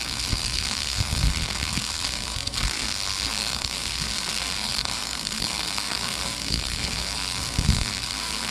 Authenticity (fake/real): fake